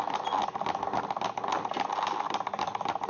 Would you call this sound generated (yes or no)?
no